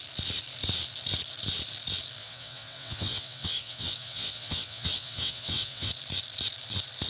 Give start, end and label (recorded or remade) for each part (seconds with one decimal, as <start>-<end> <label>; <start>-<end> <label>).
0.0-2.2 recorded; 2.2-5.9 remade; 5.9-7.1 recorded